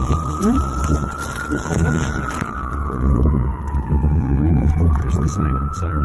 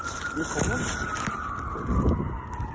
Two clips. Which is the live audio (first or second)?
second